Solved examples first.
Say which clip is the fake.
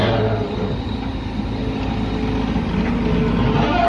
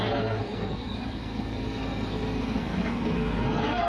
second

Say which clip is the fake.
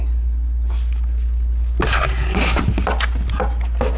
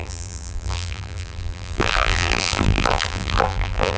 second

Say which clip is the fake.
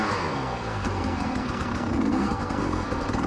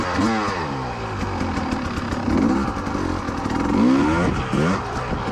first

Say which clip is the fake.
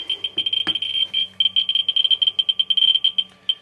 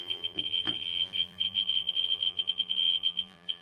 second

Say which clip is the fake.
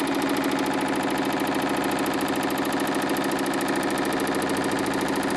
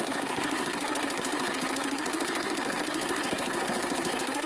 second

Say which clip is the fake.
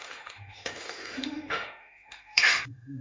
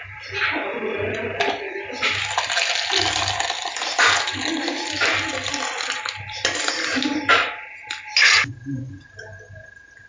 first